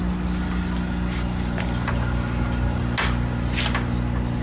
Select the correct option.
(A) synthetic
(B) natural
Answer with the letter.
B